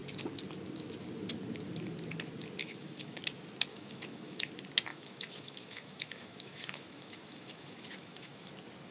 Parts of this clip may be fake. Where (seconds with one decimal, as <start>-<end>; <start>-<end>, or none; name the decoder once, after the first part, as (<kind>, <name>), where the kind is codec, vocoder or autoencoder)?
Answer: 2.6-3.2 (autoencoder, DAC-VAE); 3.7-4.5; 4.9-8.5